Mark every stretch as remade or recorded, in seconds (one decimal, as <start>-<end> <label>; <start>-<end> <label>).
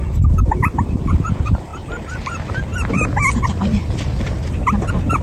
0.0-1.7 remade; 1.7-4.8 recorded; 4.8-5.2 remade